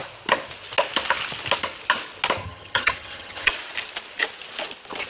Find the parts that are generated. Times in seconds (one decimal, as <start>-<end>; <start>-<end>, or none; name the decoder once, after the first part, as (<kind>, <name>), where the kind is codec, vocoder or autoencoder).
2.4-3.5 (vocoder, HiFi-GAN)

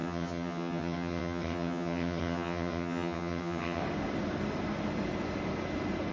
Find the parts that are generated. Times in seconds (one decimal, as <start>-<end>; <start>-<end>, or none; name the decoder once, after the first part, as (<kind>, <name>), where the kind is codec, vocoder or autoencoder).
0.0-3.8 (vocoder, HiFi-GAN)

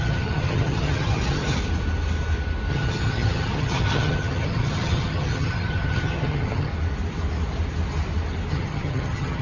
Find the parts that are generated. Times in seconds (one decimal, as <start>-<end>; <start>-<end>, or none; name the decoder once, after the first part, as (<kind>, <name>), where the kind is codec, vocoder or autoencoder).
0.0-1.6 (vocoder, HiFi-GAN); 2.7-6.7; 8.5-9.4